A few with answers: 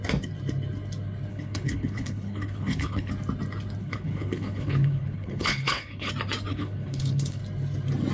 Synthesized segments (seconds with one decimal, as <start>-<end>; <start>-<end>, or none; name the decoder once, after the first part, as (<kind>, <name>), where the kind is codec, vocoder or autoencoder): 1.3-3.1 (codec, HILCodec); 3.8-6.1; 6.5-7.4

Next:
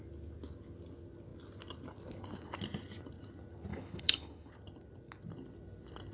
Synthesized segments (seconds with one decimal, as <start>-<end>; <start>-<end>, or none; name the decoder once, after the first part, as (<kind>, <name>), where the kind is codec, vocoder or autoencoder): 3.7-4.5 (codec, HILCodec)

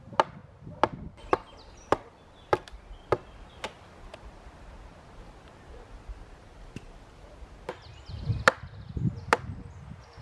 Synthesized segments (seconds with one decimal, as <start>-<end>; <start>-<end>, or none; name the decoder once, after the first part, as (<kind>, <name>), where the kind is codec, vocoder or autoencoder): none